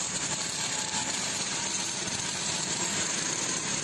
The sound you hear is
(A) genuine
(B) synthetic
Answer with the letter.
B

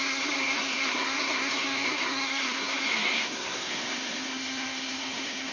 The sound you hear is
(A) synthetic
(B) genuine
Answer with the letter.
A